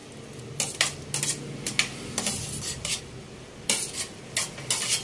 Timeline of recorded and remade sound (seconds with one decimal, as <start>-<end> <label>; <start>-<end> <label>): 0.0-5.0 recorded